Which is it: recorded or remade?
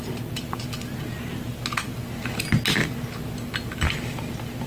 recorded